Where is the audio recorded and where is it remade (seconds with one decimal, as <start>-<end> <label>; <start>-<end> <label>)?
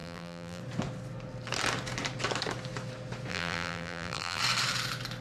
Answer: 0.0-0.6 remade; 0.6-3.3 recorded; 3.3-4.4 remade; 4.4-5.2 recorded